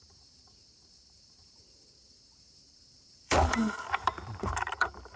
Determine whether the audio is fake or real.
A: fake